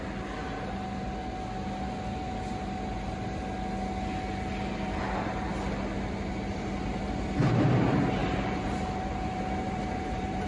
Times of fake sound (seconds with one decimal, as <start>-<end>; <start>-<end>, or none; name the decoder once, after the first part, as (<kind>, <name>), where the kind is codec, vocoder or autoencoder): 8.2-10.5 (vocoder, BigVGAN v2)